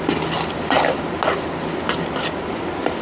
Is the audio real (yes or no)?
yes